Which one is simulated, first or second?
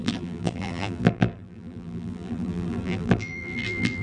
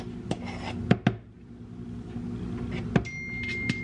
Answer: first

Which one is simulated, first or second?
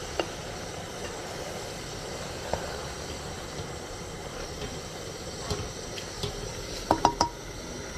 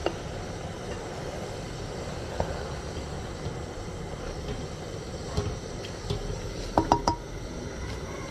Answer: first